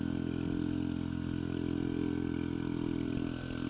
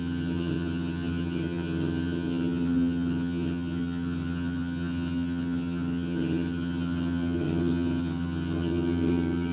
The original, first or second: first